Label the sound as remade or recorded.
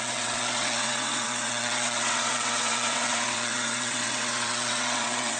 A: remade